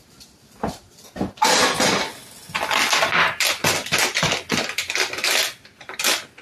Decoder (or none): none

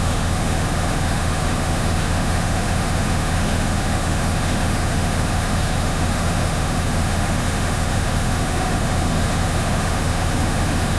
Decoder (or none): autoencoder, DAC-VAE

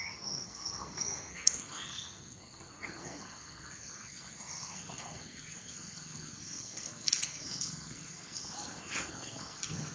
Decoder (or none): codec, SNAC